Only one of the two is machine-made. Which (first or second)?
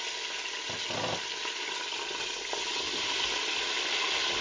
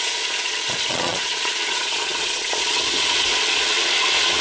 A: second